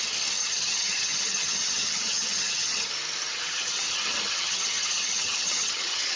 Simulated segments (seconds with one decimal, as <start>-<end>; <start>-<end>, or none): 0.4-2.9; 3.3-6.2